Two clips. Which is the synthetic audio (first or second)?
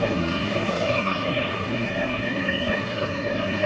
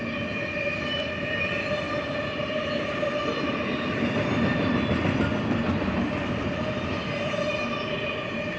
first